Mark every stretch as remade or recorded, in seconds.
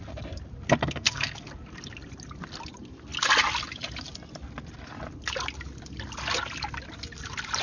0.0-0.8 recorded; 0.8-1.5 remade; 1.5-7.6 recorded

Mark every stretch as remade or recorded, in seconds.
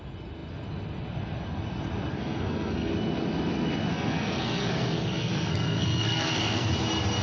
0.0-2.1 recorded; 2.1-2.9 remade; 2.9-3.9 recorded; 3.9-6.7 remade; 6.7-7.2 recorded